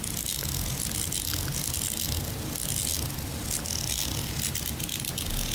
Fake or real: real